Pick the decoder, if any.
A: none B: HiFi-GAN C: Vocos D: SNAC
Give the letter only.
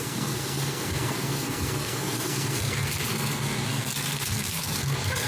D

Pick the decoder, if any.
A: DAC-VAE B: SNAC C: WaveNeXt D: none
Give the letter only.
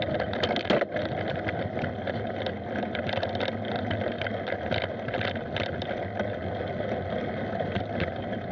D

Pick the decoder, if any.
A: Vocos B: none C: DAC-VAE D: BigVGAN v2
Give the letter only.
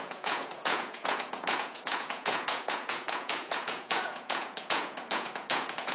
A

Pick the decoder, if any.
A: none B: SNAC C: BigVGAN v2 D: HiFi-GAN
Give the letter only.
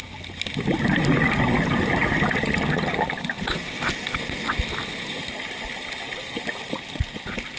A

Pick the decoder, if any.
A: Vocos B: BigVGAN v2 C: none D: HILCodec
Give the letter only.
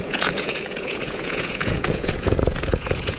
A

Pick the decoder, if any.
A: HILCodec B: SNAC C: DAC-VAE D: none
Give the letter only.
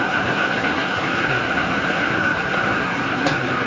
B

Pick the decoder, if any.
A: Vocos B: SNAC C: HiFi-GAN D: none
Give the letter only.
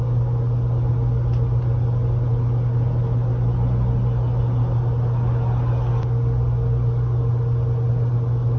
D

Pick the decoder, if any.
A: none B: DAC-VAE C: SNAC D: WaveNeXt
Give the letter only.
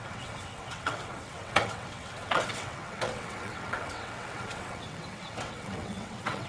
D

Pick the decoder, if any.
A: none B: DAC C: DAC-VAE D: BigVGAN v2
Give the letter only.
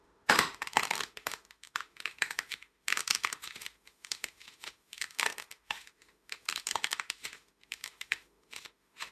C